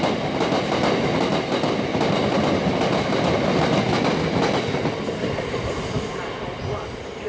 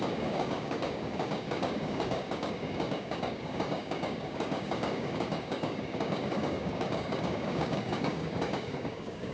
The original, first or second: first